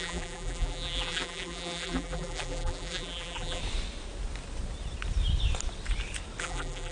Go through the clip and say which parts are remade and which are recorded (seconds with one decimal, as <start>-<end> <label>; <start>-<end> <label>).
0.0-3.6 remade; 3.6-6.4 recorded; 6.4-6.9 remade